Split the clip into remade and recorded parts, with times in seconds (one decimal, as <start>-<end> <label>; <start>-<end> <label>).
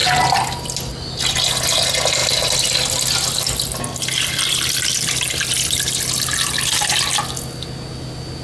0.0-8.4 recorded